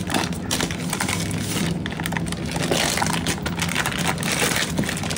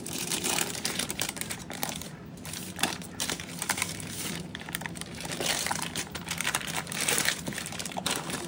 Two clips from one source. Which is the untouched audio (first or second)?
first